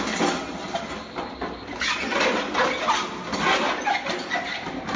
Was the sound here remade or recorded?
recorded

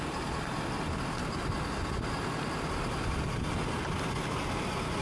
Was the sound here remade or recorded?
recorded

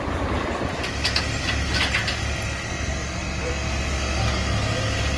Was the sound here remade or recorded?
recorded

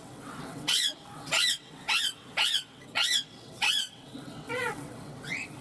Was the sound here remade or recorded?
remade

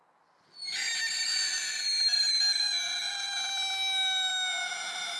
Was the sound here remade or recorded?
recorded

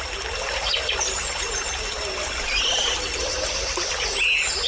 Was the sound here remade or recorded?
recorded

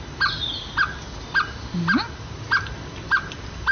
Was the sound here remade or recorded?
recorded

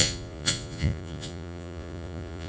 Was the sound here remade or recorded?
remade